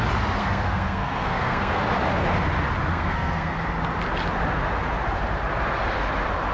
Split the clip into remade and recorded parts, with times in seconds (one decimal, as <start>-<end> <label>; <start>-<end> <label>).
0.0-0.4 recorded; 0.4-1.8 remade; 1.8-2.9 recorded; 2.9-3.5 remade; 3.5-6.5 recorded